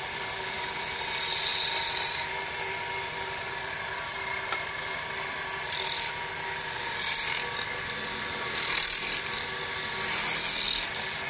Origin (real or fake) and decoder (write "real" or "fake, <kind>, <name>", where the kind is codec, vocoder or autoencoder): real